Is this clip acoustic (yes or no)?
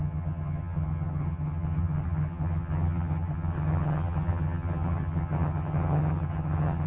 no